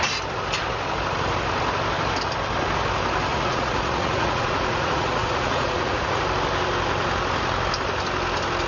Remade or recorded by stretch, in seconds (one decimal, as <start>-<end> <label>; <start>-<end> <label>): 0.0-3.3 recorded; 3.3-6.2 remade; 6.2-8.7 recorded